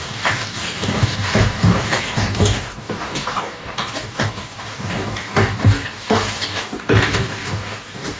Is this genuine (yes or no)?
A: no